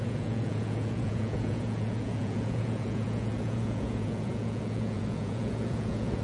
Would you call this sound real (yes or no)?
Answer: no